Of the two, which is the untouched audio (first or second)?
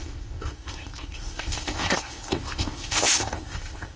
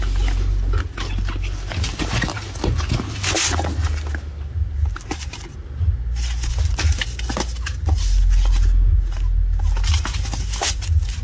second